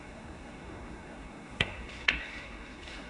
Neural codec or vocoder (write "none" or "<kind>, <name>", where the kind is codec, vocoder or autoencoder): codec, SNAC